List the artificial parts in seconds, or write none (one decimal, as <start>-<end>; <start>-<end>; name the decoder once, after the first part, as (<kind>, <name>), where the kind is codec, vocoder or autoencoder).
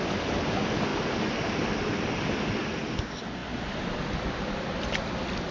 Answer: none